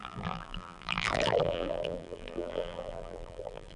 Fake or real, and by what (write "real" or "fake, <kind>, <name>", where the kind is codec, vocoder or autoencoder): fake, vocoder, BigVGAN v2